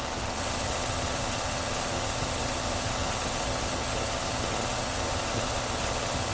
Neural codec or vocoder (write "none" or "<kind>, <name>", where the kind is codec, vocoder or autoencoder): vocoder, HiFi-GAN